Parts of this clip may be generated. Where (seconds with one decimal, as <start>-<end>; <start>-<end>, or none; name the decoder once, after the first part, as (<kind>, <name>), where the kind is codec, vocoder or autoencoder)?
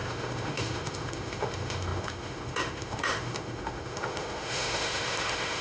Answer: 0.0-5.6 (autoencoder, DAC-VAE)